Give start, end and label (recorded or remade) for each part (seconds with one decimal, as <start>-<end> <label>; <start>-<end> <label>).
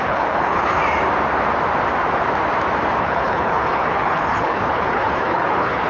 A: 0.0-0.8 remade; 0.8-3.0 recorded; 3.0-5.9 remade